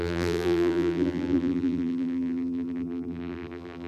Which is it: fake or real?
fake